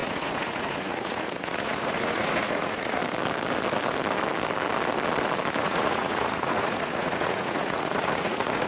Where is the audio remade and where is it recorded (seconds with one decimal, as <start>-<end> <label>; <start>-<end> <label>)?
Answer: 0.0-3.0 remade; 3.0-5.6 recorded; 5.6-8.7 remade